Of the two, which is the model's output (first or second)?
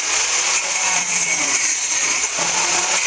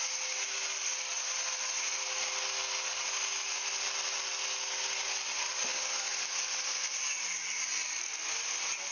first